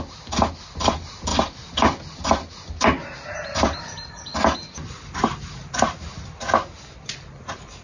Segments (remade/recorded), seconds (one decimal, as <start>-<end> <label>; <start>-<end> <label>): 0.0-7.8 recorded